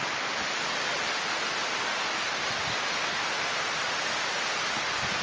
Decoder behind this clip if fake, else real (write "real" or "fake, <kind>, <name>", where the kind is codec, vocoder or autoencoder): real